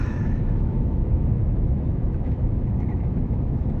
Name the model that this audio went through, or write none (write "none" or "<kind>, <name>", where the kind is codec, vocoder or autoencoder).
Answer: autoencoder, DAC-VAE